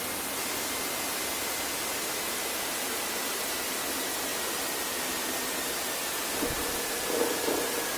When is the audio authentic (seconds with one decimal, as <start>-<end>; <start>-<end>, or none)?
0.0-8.0